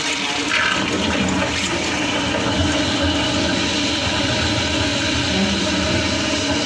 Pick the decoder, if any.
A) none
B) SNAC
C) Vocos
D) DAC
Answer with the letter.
A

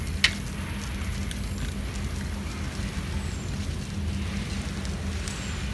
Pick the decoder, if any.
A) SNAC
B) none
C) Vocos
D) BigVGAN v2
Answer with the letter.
B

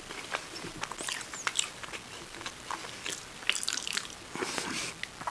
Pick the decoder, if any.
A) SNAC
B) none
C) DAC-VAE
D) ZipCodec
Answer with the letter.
B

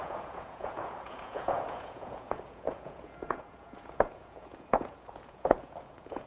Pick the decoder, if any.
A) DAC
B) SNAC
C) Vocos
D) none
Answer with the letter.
C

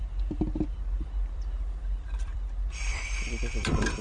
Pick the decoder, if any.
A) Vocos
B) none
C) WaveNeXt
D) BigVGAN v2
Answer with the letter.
D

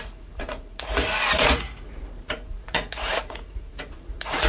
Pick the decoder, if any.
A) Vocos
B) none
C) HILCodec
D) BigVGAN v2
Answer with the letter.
A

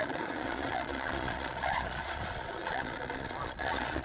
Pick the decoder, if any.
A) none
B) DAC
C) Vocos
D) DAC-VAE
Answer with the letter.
C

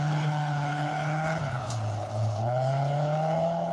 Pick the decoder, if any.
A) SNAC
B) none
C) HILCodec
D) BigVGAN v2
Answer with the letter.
C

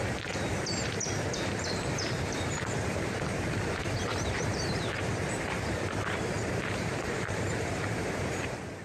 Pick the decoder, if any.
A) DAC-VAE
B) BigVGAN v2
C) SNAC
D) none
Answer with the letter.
B